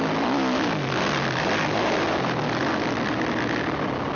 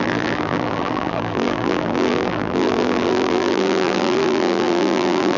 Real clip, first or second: first